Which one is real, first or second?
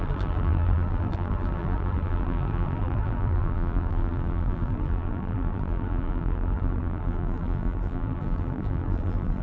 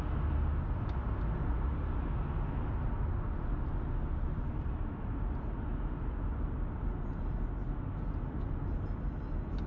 second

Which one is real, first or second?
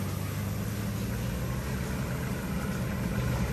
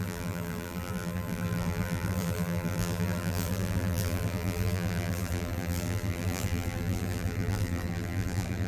first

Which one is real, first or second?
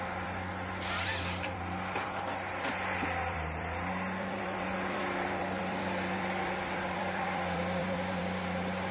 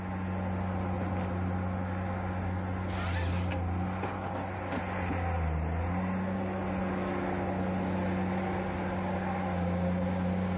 second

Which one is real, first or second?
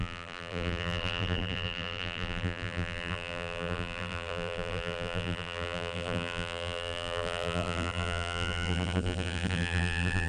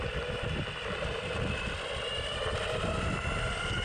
second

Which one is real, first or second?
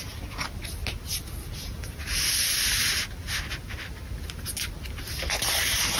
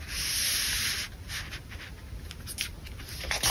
first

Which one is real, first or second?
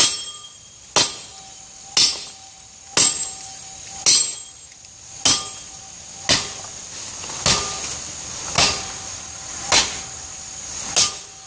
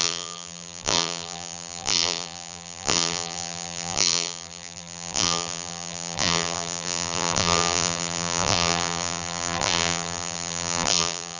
first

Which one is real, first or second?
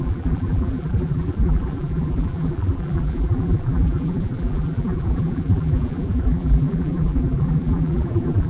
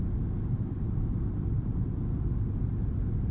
second